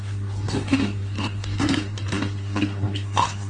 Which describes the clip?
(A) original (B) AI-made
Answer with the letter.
B